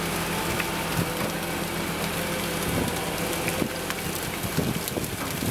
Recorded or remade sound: recorded